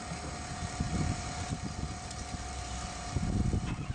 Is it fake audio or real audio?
real